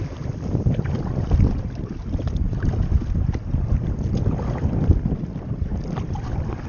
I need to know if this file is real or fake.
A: real